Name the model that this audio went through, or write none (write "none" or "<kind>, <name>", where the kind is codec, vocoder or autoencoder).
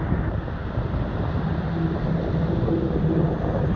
none